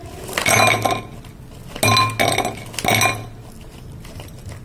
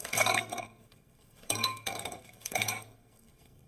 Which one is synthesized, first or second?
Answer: second